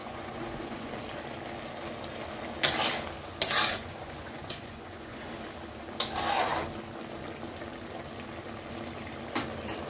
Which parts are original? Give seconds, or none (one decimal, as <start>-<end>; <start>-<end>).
0.9-3.8; 5.3-9.9